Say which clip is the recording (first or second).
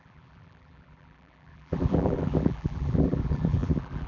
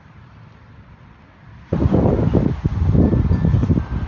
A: second